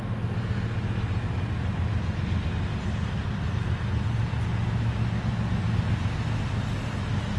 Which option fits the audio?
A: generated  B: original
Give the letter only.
B